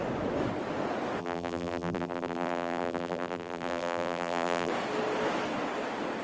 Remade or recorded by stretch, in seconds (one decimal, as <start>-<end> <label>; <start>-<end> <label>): 0.0-1.2 recorded; 1.2-4.7 remade; 4.7-6.2 recorded